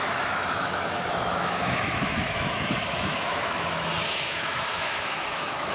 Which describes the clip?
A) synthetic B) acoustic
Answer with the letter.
A